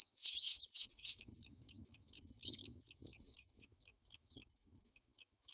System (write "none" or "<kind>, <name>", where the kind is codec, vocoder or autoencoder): autoencoder, DAC-VAE